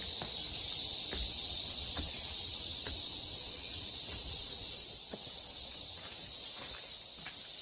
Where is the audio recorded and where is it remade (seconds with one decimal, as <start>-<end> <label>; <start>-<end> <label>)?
0.0-1.3 recorded; 1.3-5.8 remade; 5.8-7.6 recorded